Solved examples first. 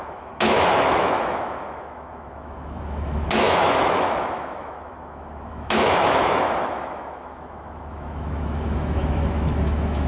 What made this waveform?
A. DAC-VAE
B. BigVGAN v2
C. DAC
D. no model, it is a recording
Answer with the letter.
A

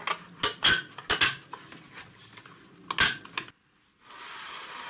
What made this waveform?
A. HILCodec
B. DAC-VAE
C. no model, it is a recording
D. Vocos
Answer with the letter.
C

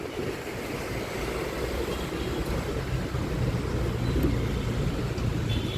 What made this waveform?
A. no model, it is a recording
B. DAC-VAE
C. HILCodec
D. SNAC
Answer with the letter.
A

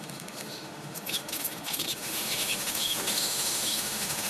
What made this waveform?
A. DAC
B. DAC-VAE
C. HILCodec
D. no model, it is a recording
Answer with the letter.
B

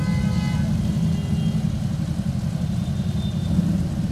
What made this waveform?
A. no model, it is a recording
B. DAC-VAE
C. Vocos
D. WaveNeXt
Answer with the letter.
A